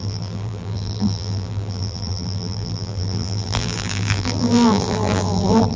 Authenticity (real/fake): fake